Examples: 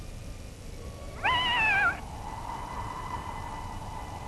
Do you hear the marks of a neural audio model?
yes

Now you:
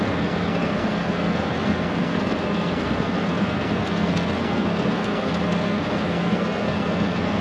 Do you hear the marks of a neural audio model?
yes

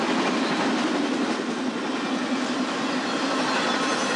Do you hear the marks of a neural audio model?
no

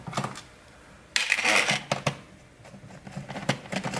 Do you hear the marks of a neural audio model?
no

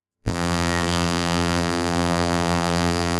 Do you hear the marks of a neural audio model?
yes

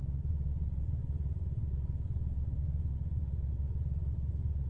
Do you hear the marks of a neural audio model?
yes